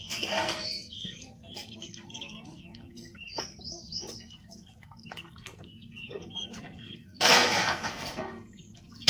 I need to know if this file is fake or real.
fake